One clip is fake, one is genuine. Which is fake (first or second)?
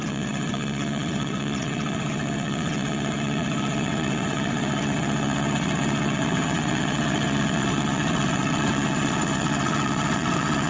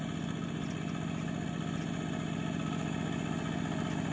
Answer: first